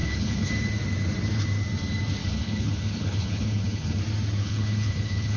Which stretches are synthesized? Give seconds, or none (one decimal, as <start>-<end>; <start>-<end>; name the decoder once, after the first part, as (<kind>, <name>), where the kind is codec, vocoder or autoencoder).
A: 0.0-0.5 (codec, HILCodec); 2.2-4.0; 4.4-5.4